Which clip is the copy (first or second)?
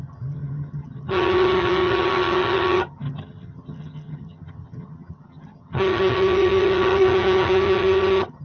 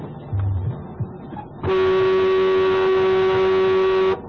first